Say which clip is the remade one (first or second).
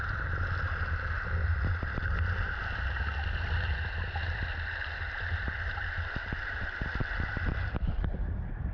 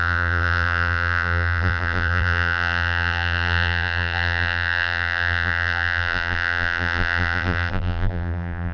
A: second